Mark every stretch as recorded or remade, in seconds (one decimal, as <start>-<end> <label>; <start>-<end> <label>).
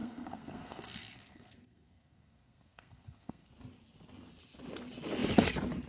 0.0-3.5 remade; 3.5-5.9 recorded